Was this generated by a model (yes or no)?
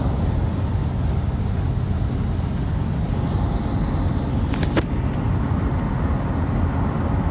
no